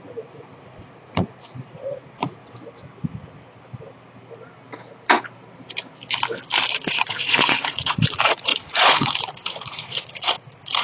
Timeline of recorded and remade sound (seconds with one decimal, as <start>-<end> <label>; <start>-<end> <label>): 0.0-2.4 remade; 2.4-6.7 recorded; 6.7-10.8 remade